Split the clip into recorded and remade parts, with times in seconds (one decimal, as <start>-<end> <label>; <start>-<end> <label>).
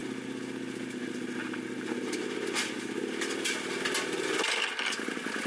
0.0-5.5 recorded